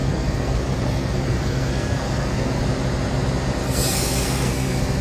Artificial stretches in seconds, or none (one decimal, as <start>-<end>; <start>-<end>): 0.0-2.6; 3.6-5.0